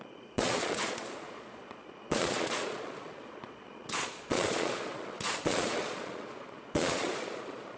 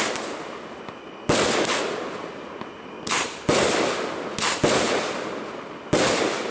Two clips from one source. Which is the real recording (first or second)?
second